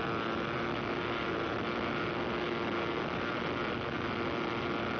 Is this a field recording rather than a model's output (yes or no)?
yes